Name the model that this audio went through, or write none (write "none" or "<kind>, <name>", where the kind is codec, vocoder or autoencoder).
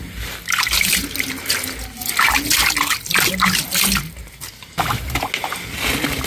none